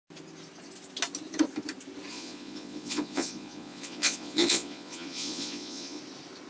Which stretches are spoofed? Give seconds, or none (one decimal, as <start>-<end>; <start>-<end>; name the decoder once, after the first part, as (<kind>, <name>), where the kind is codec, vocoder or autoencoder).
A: 2.1-6.0 (vocoder, Vocos)